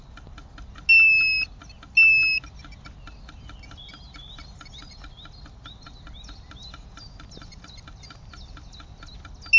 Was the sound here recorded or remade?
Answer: recorded